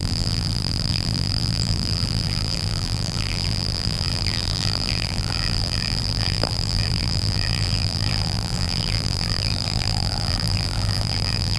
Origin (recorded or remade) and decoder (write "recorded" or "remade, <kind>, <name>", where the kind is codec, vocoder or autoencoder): remade, vocoder, BigVGAN v2